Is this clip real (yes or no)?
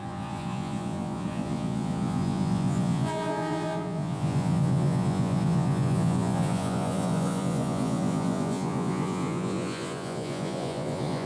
no